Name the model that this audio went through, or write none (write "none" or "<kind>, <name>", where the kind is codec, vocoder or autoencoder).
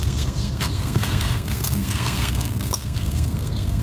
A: codec, SNAC